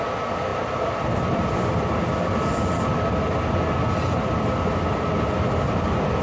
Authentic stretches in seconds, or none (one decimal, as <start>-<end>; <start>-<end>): 0.0-0.5; 2.5-6.2